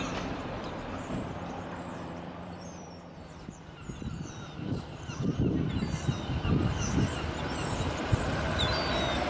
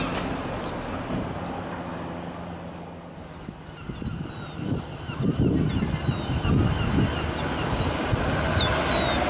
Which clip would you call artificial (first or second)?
first